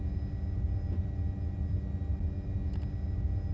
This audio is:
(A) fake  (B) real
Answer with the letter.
B